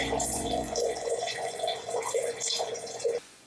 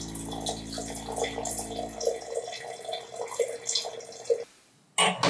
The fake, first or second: first